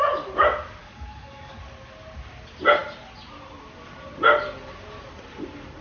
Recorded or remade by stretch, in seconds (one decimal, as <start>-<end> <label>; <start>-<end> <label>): 0.0-0.8 recorded; 0.8-1.6 remade; 1.6-5.8 recorded